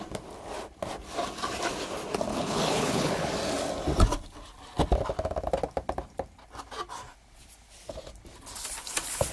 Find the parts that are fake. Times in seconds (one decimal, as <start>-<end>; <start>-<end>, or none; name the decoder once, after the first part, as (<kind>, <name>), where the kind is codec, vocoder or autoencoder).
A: 2.3-3.3 (codec, HILCodec)